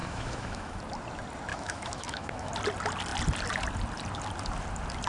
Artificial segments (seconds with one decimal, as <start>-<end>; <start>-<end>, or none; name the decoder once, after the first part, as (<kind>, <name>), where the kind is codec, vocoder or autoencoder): 0.0-0.8 (autoencoder, DAC-VAE); 1.5-2.5